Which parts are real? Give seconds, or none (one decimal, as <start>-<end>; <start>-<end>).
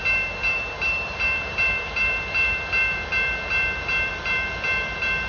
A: none